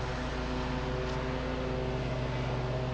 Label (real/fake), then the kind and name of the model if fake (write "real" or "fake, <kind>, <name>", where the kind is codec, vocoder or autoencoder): real